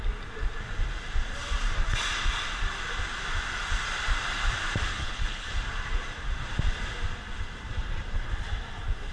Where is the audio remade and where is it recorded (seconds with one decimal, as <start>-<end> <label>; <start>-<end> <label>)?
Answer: 0.0-4.9 recorded; 4.9-5.5 remade; 5.5-9.1 recorded